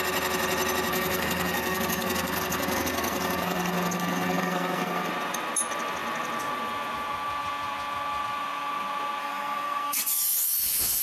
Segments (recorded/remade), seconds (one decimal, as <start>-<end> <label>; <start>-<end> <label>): 0.0-0.9 recorded; 0.9-5.1 remade; 5.1-9.2 recorded; 9.2-10.1 remade; 10.1-11.0 recorded